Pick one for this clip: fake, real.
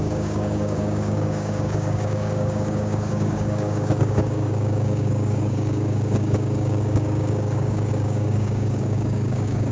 fake